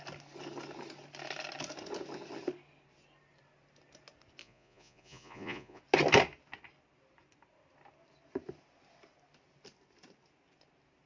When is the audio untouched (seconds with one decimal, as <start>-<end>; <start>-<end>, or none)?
0.0-4.4; 5.8-11.1